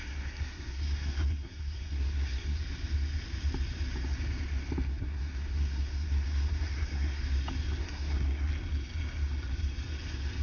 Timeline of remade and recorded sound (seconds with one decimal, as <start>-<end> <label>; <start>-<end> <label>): 0.0-2.6 remade; 2.6-4.9 recorded; 4.9-7.2 remade; 7.2-7.8 recorded; 7.8-8.5 remade; 8.5-10.4 recorded